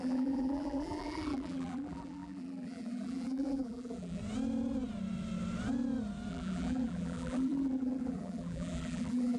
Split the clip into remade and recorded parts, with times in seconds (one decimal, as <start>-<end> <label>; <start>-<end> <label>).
0.0-4.2 remade; 4.2-6.3 recorded; 6.3-9.4 remade